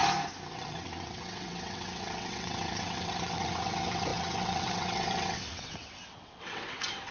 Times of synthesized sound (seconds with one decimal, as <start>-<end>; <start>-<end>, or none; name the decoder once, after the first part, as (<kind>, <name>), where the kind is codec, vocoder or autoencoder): 0.5-7.1 (vocoder, WaveNeXt)